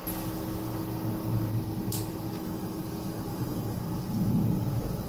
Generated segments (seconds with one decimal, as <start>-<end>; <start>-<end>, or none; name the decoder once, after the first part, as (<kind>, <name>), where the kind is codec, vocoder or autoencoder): 2.1-2.6 (autoencoder, DAC-VAE); 3.3-3.8